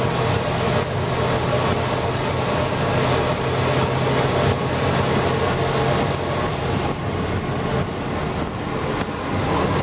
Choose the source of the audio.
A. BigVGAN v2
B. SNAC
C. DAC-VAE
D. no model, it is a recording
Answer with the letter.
D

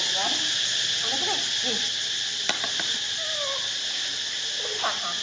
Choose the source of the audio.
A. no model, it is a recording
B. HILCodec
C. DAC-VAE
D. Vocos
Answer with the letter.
A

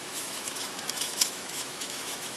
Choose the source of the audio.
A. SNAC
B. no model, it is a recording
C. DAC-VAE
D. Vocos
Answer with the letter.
C